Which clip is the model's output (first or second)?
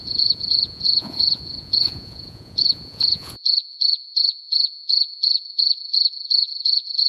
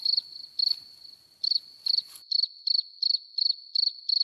first